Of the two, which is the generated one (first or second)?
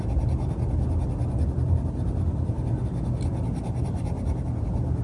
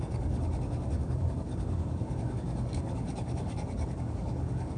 second